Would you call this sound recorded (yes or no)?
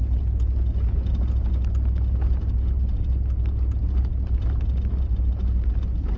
yes